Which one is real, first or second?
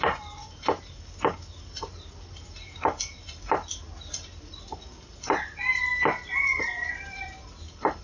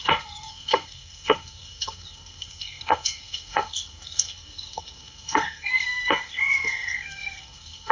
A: first